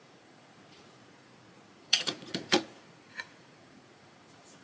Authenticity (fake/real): fake